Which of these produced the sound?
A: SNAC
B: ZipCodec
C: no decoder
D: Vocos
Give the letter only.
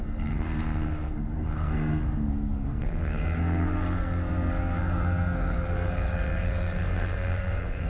A